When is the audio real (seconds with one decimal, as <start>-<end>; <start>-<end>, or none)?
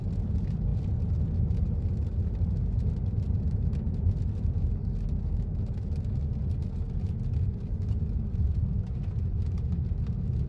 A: 0.0-10.5